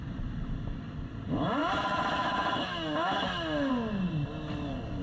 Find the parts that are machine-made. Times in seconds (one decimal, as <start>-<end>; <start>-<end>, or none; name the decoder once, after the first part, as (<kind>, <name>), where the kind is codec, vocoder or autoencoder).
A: 1.6-3.7 (autoencoder, DAC-VAE)